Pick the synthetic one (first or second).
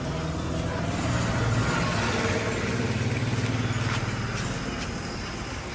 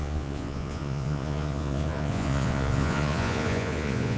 second